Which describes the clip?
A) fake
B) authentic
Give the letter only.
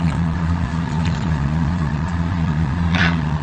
A